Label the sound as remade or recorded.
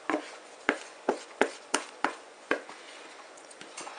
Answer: remade